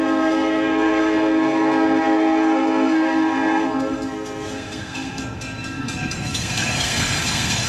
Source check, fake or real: fake